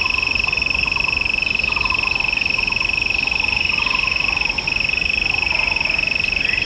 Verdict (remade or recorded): recorded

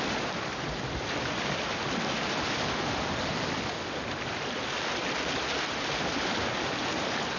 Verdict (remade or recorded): recorded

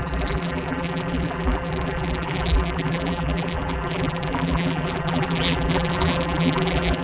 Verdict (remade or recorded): remade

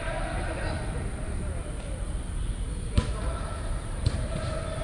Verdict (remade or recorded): remade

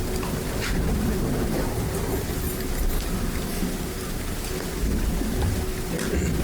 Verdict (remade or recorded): recorded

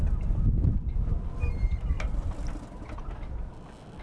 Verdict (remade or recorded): recorded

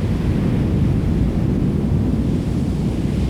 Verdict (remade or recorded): recorded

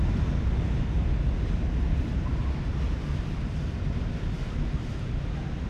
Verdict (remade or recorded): recorded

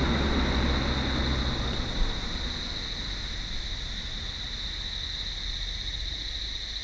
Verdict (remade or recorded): recorded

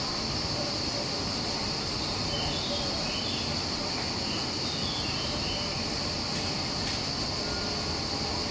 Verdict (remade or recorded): recorded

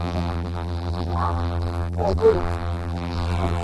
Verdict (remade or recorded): remade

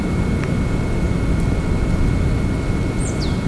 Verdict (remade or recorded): recorded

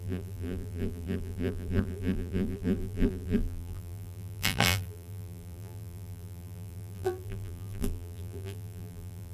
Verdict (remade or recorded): remade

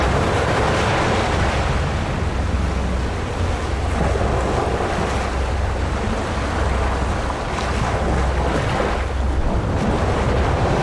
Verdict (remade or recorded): recorded